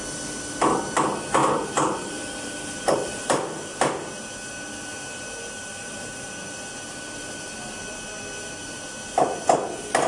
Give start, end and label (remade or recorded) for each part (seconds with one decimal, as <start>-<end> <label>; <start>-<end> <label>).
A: 0.0-1.4 recorded; 1.4-4.1 remade; 4.1-5.7 recorded; 5.7-7.8 remade; 7.8-10.1 recorded